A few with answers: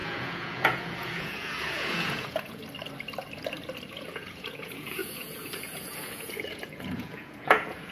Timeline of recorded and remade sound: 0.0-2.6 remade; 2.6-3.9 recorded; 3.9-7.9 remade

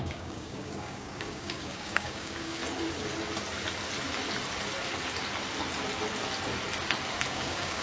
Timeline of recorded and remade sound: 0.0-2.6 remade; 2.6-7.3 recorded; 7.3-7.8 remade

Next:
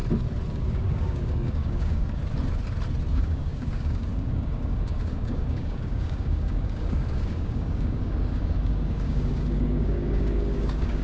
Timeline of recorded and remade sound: 0.0-0.5 recorded; 0.5-2.2 remade; 2.2-3.1 recorded; 3.1-11.0 remade

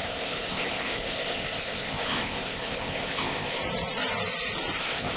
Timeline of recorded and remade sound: 0.0-3.6 remade; 3.6-4.8 recorded; 4.8-5.2 remade

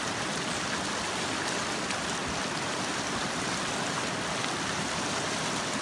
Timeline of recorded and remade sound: 0.0-5.8 recorded

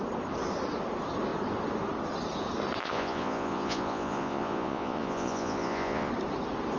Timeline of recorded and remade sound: 0.0-2.8 recorded; 2.8-6.1 remade; 6.1-6.8 recorded

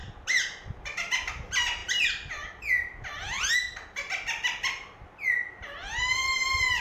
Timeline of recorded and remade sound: 0.0-6.8 recorded